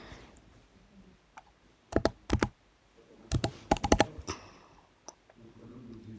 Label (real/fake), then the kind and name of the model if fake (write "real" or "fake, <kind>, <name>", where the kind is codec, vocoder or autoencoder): fake, vocoder, BigVGAN v2